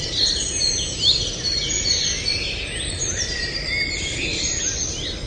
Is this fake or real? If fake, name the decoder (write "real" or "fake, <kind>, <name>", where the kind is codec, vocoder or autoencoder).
real